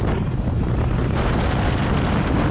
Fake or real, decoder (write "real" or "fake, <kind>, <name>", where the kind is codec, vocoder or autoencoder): real